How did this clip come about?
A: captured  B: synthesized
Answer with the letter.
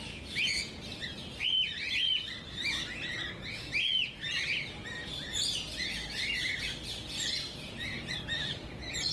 A